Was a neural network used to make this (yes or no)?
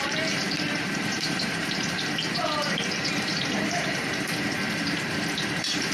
yes